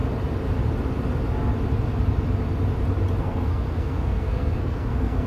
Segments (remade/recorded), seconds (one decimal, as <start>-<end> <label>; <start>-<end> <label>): 0.0-3.2 recorded; 3.2-5.3 remade